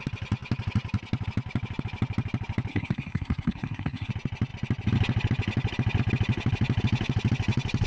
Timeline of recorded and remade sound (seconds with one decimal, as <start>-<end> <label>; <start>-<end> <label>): 0.0-2.7 recorded; 2.7-4.1 remade; 4.1-7.9 recorded